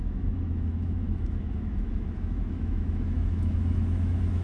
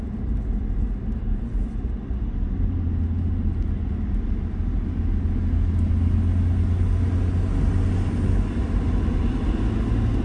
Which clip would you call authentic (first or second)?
second